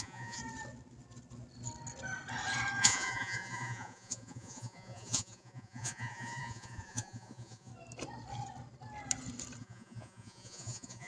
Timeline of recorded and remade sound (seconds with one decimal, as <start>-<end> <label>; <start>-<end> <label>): 0.0-0.4 remade; 0.4-2.8 recorded; 2.8-7.7 remade; 7.7-9.6 recorded; 9.6-11.1 remade